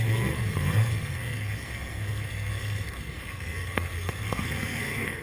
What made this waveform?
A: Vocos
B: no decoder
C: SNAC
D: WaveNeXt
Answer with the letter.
C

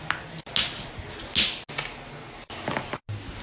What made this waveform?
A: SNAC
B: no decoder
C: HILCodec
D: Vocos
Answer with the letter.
B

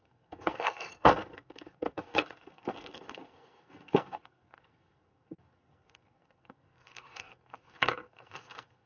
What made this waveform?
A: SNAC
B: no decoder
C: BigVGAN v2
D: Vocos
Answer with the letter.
A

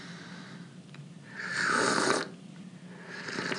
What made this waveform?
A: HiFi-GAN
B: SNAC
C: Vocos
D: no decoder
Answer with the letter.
D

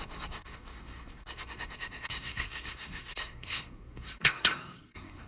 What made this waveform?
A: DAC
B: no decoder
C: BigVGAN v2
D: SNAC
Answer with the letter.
D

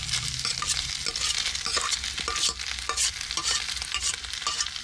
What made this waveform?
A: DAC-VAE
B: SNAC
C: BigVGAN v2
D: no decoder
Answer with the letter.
D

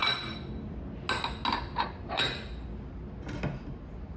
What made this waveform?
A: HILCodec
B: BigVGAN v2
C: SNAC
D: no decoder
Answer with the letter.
D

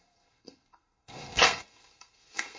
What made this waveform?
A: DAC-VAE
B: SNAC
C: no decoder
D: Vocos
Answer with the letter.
B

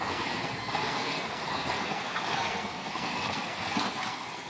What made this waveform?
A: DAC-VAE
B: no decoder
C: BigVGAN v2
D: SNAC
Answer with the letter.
D